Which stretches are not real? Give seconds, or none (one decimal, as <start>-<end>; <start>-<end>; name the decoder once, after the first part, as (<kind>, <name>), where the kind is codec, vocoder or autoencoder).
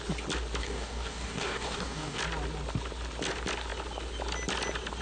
0.6-2.2 (codec, DAC)